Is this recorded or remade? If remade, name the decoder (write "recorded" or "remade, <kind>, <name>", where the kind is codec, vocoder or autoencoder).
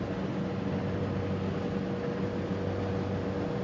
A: recorded